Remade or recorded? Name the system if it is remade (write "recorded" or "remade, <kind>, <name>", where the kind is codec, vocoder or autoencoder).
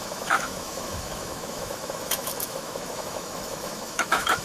remade, autoencoder, DAC-VAE